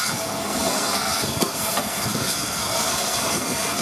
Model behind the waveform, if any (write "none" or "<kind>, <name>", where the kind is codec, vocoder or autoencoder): codec, SNAC